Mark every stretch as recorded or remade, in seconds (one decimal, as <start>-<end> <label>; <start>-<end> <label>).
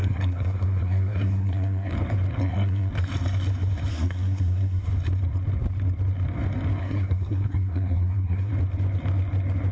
0.0-1.9 remade; 1.9-2.4 recorded; 2.4-2.9 remade; 2.9-3.9 recorded; 3.9-4.9 remade; 4.9-6.8 recorded; 6.8-8.5 remade; 8.5-9.7 recorded